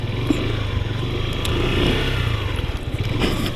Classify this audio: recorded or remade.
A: recorded